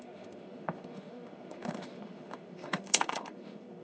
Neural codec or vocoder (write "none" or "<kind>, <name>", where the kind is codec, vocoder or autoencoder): autoencoder, DAC-VAE